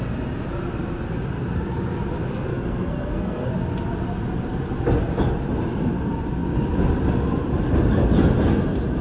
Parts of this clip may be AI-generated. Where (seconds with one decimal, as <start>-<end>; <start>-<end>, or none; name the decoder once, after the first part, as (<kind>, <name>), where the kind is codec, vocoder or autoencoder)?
2.5-3.5 (codec, SNAC)